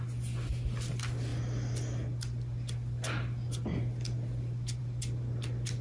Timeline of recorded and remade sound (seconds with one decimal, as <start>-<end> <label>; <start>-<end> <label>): 0.0-5.8 recorded